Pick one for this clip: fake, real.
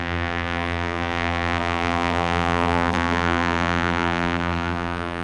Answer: fake